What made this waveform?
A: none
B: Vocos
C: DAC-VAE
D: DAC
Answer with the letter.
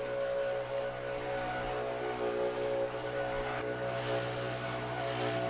A